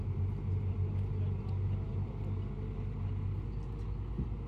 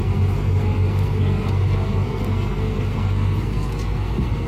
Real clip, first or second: first